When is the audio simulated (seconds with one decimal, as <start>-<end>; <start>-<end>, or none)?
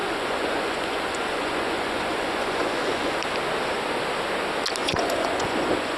0.0-3.2; 4.8-6.0